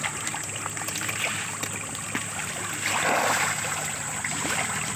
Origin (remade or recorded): recorded